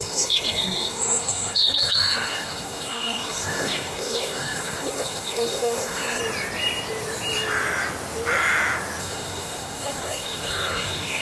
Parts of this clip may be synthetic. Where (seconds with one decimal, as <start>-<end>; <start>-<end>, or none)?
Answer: 0.0-6.2; 9.0-11.2